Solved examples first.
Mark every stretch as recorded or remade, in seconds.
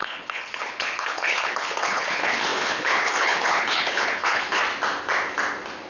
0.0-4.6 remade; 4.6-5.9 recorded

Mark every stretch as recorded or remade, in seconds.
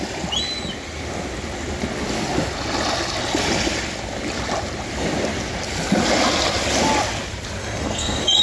0.0-7.6 recorded; 7.6-8.4 remade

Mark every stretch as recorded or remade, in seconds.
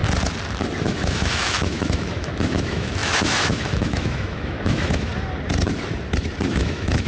0.0-0.8 recorded; 0.8-5.1 remade; 5.1-6.5 recorded; 6.5-7.1 remade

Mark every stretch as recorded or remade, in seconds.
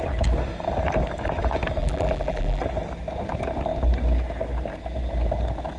0.0-1.8 recorded; 1.8-2.6 remade; 2.6-5.8 recorded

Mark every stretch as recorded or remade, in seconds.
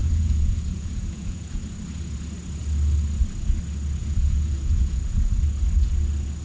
0.0-1.6 remade; 1.6-4.0 recorded; 4.0-5.3 remade; 5.3-6.4 recorded